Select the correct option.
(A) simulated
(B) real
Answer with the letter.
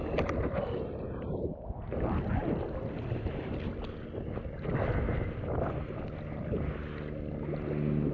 B